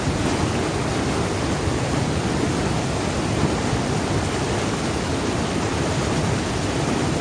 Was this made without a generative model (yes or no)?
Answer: yes